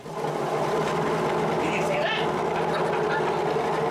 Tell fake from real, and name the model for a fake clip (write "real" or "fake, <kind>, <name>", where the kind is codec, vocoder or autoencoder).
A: real